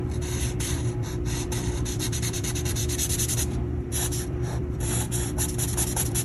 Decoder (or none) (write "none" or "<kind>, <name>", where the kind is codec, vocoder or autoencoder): vocoder, BigVGAN v2